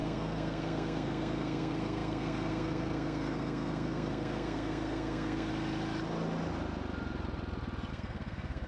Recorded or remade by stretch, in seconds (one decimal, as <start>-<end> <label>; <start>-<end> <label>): 0.0-5.5 remade; 5.5-7.9 recorded; 7.9-8.7 remade